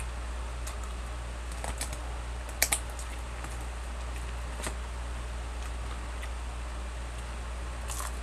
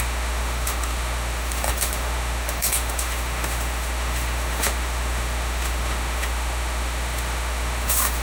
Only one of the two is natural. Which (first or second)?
first